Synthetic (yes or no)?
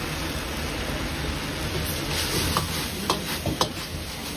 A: no